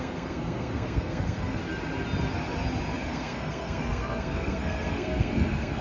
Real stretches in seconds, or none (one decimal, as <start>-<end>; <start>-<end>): 1.6-3.1